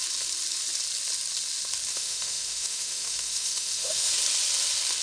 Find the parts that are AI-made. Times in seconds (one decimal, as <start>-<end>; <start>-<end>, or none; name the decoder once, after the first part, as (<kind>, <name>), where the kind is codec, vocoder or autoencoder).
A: 1.9-4.1 (autoencoder, DAC-VAE)